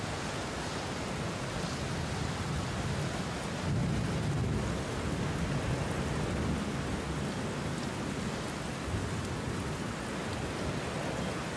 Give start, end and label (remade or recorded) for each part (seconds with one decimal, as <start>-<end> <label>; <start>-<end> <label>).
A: 0.0-11.6 recorded